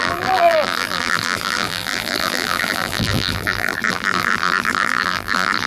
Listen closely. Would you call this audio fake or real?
fake